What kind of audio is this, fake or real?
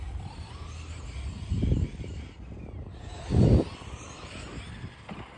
real